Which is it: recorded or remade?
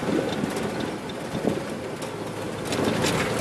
recorded